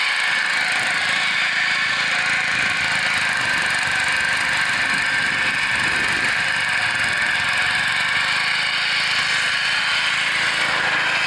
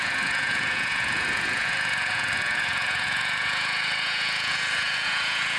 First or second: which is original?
first